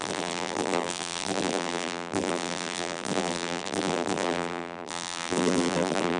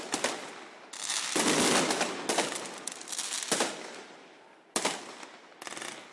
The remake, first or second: first